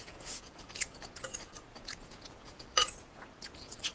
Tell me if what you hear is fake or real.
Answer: fake